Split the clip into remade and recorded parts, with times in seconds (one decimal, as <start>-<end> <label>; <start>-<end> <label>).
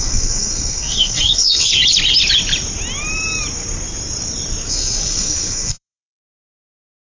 0.0-1.7 remade; 1.7-4.7 recorded; 4.7-7.1 remade